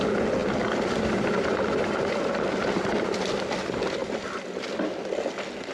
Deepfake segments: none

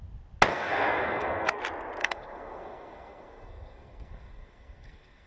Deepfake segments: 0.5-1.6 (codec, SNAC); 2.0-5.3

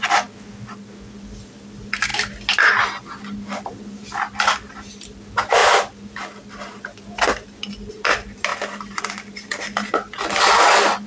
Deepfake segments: none

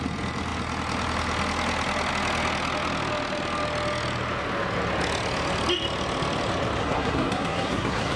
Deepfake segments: 6.8-8.2 (codec, SNAC)